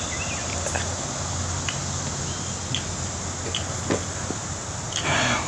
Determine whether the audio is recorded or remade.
recorded